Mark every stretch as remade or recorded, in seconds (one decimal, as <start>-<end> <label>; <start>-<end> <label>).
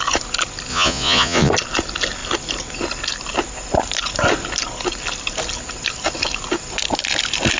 0.0-0.7 recorded; 0.7-1.5 remade; 1.5-7.6 recorded